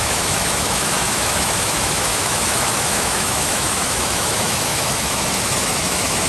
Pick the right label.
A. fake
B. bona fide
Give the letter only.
A